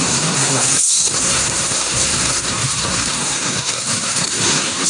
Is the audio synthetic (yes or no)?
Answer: yes